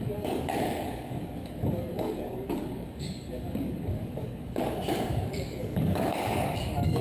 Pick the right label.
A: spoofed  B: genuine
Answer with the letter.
A